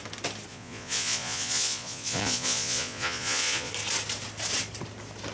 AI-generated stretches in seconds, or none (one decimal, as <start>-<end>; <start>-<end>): 0.5-3.7